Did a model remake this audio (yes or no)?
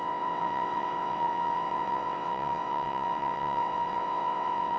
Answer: yes